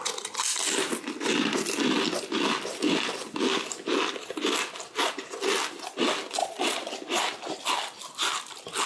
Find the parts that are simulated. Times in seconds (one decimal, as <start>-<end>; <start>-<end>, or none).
6.4-6.9